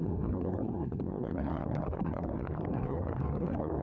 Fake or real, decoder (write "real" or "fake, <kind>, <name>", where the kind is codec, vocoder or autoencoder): fake, codec, SNAC